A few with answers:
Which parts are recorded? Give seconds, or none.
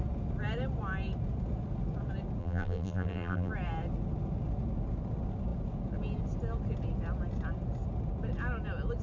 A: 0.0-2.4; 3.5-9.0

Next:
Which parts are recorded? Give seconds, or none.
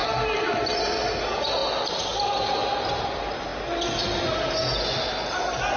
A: 0.0-5.8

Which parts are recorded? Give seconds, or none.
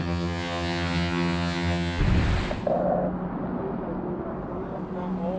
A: 2.0-5.4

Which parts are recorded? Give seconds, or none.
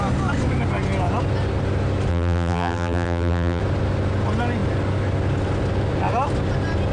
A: 0.0-2.1; 3.6-6.9